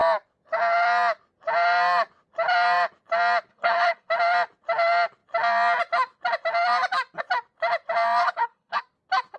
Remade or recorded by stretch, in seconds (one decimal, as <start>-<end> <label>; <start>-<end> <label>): 0.0-3.5 recorded; 3.5-4.1 remade; 4.1-8.2 recorded; 8.2-8.8 remade; 8.8-9.4 recorded